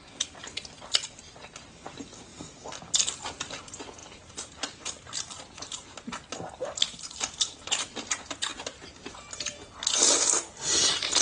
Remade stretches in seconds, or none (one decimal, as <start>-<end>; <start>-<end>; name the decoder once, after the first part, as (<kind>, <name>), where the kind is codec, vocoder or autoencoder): 2.3-3.1 (vocoder, BigVGAN v2); 4.0-7.1; 8.5-9.6